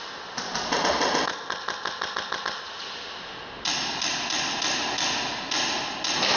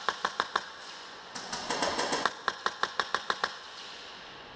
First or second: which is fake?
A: second